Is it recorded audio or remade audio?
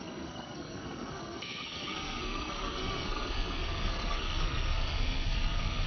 remade